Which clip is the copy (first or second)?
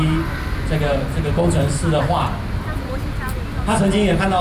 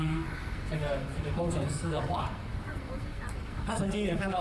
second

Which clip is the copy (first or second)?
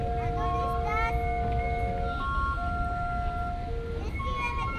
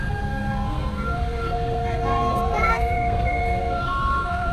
second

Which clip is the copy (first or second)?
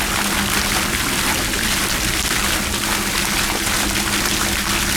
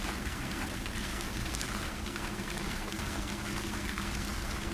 second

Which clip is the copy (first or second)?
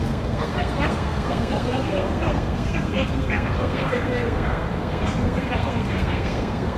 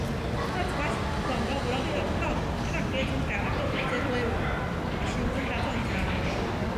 first